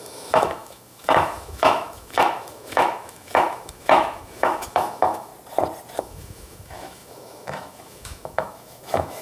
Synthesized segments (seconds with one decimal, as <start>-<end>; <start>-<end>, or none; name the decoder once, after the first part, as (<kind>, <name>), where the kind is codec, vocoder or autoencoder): 0.0-5.3 (autoencoder, DAC-VAE); 6.0-9.2